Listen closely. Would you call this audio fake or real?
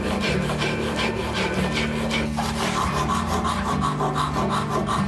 real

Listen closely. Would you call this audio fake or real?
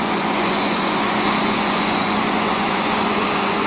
fake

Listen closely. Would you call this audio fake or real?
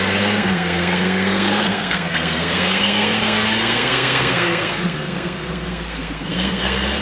fake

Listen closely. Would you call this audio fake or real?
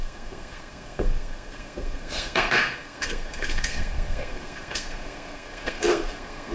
fake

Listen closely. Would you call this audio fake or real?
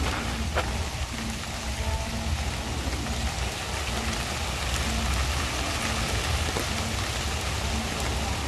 real